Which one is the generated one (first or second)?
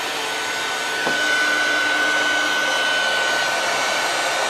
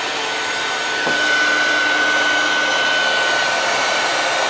second